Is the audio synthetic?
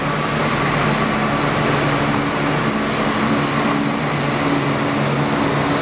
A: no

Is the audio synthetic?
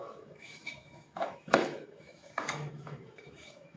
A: yes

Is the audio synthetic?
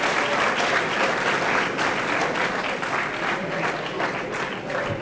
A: no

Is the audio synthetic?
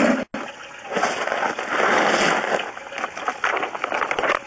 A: no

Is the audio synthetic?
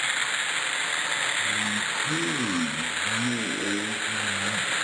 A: no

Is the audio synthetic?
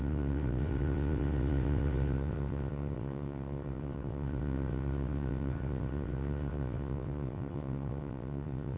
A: yes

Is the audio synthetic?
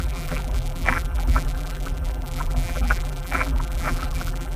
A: yes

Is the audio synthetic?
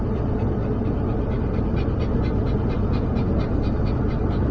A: no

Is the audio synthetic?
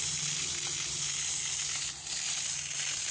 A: no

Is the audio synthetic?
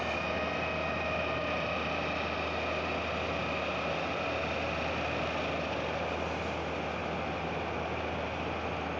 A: no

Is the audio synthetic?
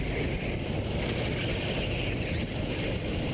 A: no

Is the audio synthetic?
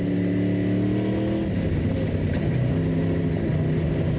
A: no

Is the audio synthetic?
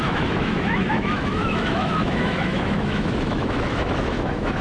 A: yes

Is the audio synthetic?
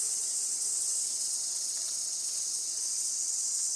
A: yes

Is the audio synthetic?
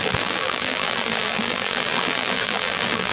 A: yes